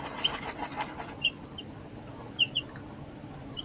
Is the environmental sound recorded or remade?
recorded